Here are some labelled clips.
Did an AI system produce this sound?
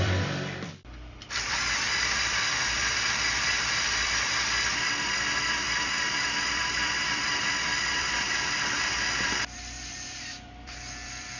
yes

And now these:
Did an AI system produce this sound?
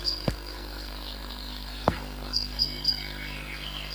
yes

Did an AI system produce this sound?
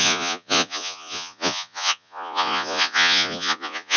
yes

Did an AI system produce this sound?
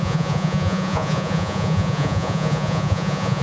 yes